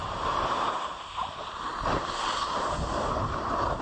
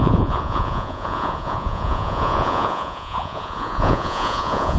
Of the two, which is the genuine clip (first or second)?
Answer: first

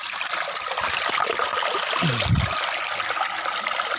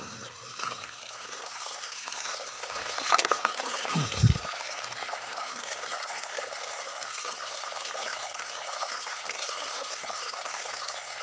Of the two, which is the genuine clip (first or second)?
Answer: first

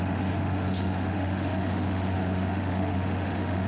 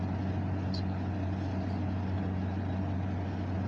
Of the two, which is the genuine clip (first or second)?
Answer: second